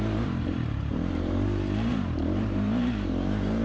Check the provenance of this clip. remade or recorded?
remade